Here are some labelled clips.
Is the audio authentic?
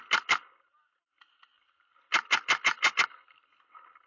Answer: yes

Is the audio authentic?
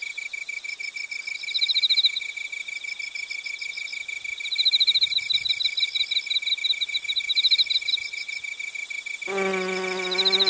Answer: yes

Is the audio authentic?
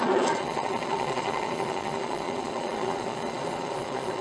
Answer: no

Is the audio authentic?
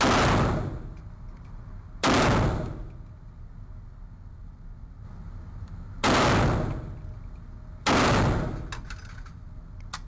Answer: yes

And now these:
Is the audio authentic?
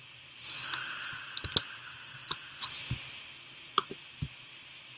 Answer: yes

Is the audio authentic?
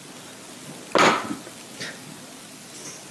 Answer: yes